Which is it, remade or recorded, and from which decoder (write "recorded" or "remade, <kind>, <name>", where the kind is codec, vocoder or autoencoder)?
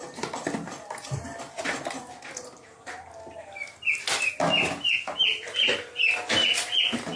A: recorded